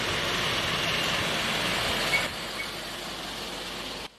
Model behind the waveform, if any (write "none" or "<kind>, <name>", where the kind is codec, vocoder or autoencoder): none